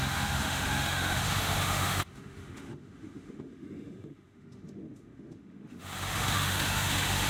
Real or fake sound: fake